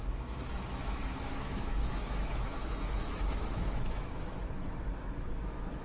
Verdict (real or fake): fake